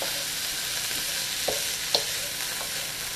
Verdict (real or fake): real